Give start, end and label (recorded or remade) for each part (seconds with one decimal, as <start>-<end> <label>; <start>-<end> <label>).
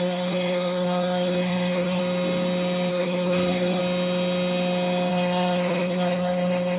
0.0-2.0 remade; 2.0-2.9 recorded; 2.9-3.8 remade; 3.8-5.1 recorded; 5.1-6.8 remade